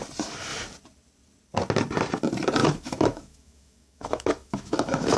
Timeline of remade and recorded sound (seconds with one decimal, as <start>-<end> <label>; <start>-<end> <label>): 0.0-2.6 recorded; 2.6-5.2 remade